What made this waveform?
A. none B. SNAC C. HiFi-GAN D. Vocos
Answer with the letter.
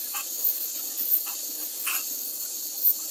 A